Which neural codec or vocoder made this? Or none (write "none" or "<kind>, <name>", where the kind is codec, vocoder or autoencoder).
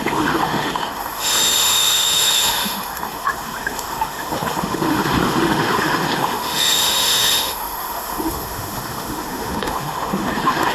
autoencoder, DAC-VAE